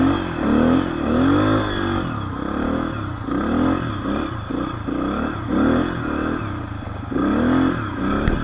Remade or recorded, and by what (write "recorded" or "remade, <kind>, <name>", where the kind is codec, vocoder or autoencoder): recorded